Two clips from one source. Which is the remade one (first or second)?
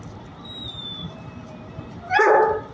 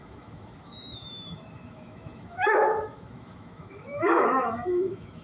second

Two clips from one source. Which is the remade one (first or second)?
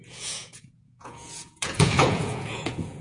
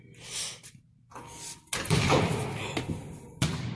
first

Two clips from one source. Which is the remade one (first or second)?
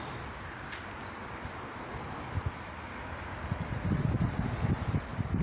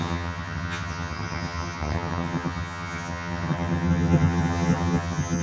second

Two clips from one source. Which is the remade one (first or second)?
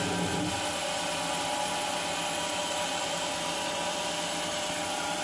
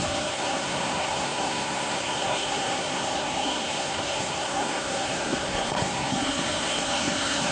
second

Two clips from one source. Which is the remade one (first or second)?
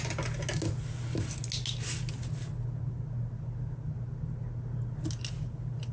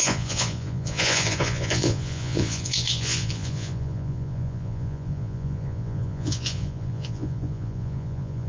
second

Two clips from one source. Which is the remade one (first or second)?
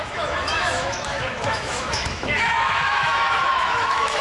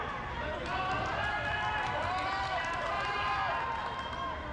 first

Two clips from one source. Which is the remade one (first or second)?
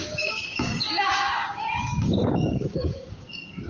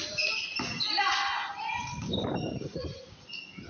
first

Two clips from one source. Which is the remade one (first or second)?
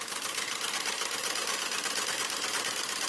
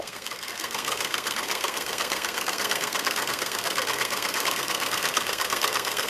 second